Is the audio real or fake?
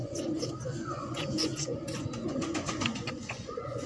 fake